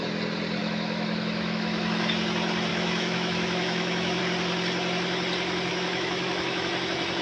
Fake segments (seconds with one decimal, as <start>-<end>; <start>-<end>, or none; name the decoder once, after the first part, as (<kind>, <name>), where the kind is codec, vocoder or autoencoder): 0.6-2.1 (autoencoder, DAC-VAE); 2.7-4.2; 5.7-6.7